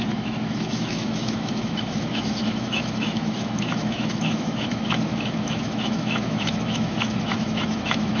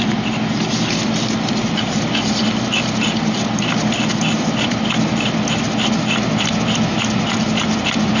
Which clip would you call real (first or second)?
second